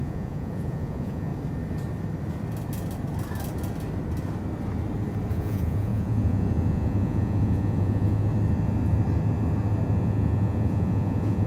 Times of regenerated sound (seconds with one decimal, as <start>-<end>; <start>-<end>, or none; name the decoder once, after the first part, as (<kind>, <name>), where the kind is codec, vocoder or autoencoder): 0.0-1.3 (vocoder, Vocos); 5.3-8.3; 10.0-11.5